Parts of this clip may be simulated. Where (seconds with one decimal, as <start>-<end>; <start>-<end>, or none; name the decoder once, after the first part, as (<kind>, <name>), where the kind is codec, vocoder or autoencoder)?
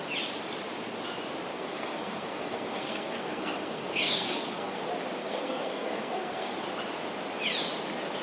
1.5-4.8 (codec, SNAC); 5.2-6.5